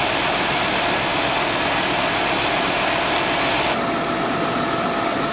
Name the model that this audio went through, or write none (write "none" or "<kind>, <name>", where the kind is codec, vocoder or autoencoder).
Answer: none